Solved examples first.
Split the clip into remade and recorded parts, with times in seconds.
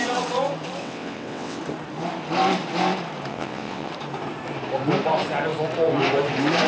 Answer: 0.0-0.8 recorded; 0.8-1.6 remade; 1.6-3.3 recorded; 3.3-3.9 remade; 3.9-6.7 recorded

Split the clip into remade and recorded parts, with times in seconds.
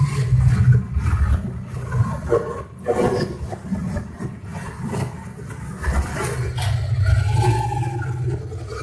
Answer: 0.0-8.8 recorded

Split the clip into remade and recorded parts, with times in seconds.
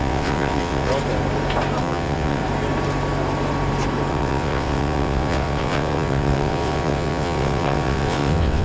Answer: 0.0-0.9 remade; 0.9-1.8 recorded; 1.8-2.4 remade; 2.4-4.1 recorded; 4.1-8.6 remade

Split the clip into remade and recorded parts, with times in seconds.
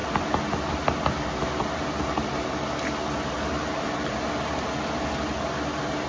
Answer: 0.0-6.1 recorded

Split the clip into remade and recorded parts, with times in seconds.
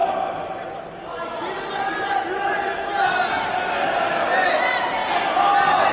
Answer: 0.0-5.9 recorded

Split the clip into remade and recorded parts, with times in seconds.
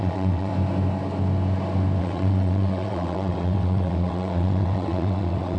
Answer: 0.0-0.5 remade; 0.5-2.0 recorded; 2.0-5.6 remade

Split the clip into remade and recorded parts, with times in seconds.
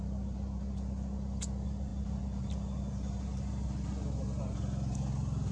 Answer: 0.0-5.5 recorded